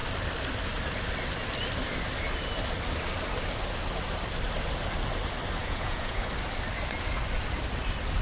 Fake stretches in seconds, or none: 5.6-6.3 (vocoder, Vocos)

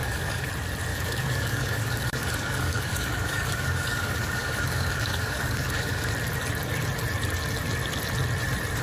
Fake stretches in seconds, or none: 0.0-0.5 (codec, DAC); 0.9-6.1

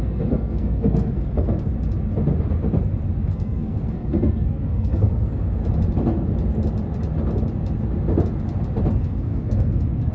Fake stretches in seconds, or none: 0.0-1.7 (codec, SNAC); 3.2-5.6; 9.0-10.1

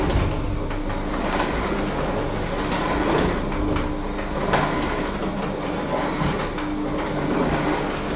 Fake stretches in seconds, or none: none

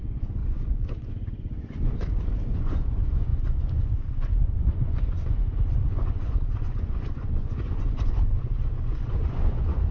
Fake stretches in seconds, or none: 0.0-9.9 (vocoder, Vocos)

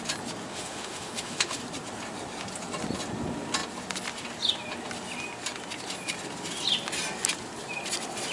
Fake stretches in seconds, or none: 0.5-1.6 (autoencoder, DAC-VAE)

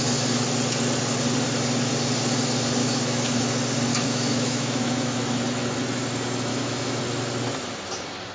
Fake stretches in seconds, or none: 2.8-3.4 (autoencoder, DAC-VAE); 3.9-5.2; 6.5-7.0

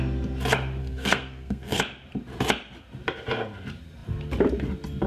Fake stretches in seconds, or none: 0.8-1.8 (codec, SNAC)